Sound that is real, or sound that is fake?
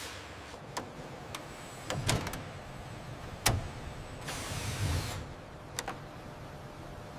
real